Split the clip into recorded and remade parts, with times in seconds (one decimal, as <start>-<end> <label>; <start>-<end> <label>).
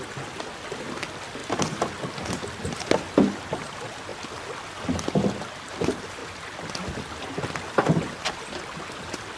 0.0-6.2 recorded; 6.2-7.6 remade; 7.6-9.4 recorded